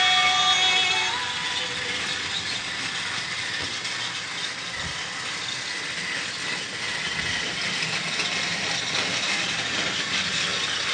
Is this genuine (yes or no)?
yes